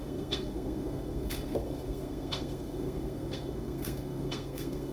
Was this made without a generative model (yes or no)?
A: no